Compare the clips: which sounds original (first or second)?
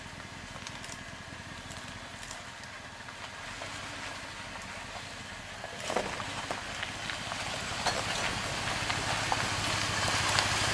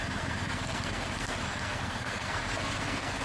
first